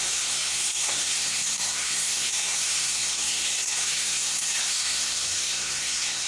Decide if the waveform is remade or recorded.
remade